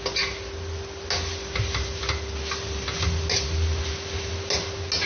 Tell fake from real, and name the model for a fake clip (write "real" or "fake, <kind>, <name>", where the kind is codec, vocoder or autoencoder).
real